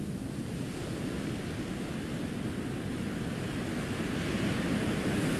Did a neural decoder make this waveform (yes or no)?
no